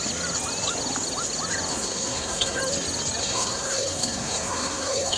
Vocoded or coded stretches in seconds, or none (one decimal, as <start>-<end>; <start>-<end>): 1.7-2.6; 3.2-5.2